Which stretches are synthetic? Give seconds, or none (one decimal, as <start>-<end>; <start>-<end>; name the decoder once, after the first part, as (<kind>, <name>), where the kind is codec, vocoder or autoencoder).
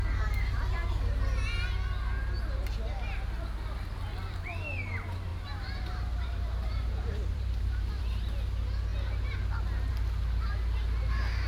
5.3-8.0 (vocoder, BigVGAN v2)